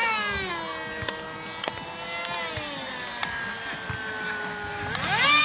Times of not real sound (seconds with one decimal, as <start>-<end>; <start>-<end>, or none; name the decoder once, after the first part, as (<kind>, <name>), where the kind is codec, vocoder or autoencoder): none